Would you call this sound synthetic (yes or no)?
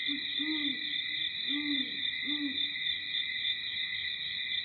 no